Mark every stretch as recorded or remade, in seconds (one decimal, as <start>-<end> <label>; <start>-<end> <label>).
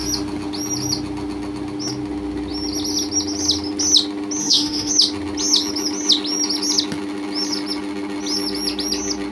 0.0-4.4 recorded; 4.4-4.9 remade; 4.9-9.3 recorded